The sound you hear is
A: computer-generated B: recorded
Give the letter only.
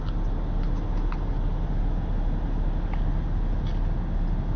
B